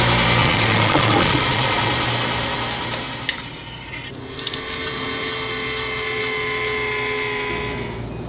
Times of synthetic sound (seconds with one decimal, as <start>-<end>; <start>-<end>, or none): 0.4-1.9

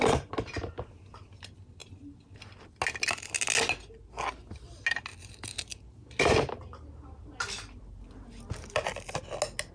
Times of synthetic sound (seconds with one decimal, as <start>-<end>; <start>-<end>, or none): none

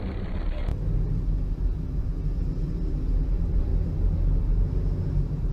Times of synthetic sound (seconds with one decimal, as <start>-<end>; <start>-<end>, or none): none